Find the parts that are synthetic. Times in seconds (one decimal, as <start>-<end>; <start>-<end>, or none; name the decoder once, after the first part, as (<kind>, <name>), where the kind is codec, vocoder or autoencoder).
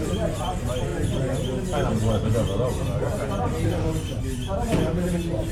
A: none